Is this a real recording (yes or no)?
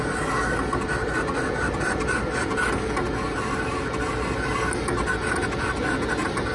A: yes